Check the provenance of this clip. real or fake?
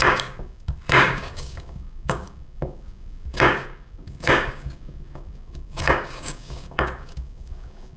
fake